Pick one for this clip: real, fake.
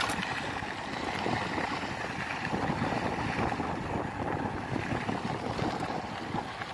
real